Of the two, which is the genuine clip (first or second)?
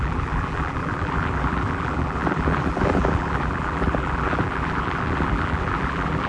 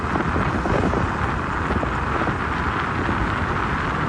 second